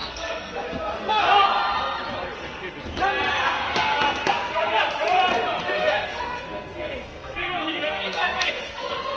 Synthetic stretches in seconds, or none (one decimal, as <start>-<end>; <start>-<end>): 0.0-1.5; 3.3-4.8; 5.6-9.2